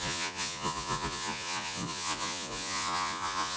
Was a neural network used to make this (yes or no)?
yes